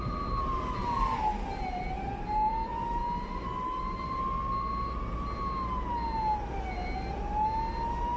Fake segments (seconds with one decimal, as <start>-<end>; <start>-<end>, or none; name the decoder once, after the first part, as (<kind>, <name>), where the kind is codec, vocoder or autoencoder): none